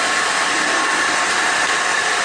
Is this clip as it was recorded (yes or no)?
yes